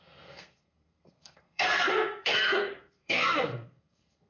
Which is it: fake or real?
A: fake